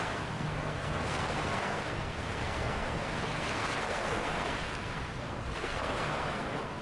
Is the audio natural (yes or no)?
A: no